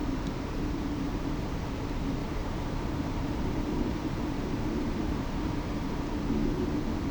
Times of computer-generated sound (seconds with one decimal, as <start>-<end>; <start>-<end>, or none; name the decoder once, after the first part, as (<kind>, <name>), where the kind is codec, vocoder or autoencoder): 0.0-1.2 (vocoder, BigVGAN v2); 2.2-6.0